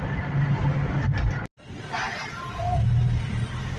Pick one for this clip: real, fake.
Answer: real